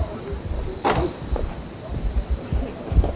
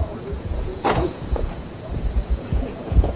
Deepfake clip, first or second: second